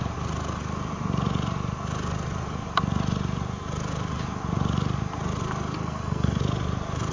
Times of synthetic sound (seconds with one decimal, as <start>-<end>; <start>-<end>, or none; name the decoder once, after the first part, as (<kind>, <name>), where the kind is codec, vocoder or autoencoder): 5.8-6.4 (codec, SNAC)